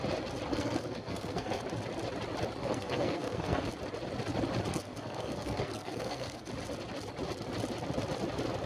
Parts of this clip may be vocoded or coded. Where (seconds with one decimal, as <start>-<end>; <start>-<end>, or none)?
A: 0.5-1.6; 2.6-3.7; 4.7-6.5